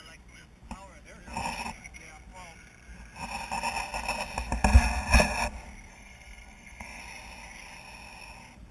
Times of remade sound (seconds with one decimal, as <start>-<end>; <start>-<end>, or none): 5.9-7.0